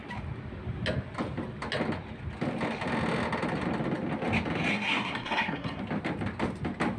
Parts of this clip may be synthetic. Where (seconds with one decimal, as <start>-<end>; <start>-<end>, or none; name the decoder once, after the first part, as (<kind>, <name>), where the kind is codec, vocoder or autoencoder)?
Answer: 4.7-5.8 (codec, SNAC)